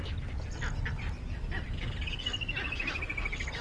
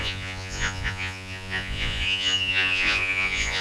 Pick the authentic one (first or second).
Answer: first